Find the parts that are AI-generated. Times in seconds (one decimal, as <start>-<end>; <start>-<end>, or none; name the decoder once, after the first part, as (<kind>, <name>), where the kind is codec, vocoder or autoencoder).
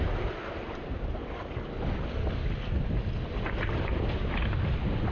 none